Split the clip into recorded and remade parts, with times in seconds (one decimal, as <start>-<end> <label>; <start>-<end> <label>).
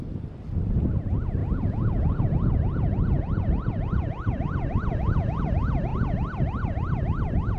0.0-1.4 recorded; 1.4-5.4 remade; 5.4-7.6 recorded